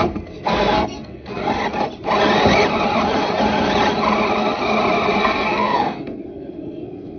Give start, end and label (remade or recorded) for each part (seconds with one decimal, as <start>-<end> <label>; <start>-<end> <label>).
0.0-1.4 remade; 1.4-5.2 recorded; 5.2-7.2 remade